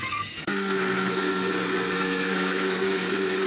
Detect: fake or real fake